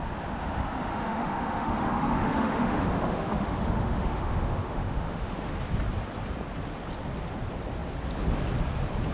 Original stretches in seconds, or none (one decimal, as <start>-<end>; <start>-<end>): 0.0-0.9; 5.5-9.1